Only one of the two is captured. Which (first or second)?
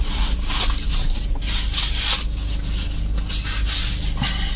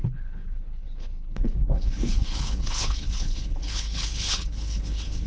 first